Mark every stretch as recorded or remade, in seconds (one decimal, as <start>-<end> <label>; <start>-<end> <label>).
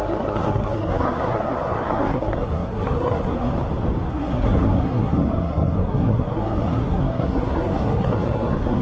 0.0-3.5 remade; 3.5-4.1 recorded; 4.1-8.8 remade